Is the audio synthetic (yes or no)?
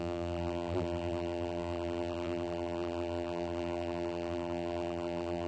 yes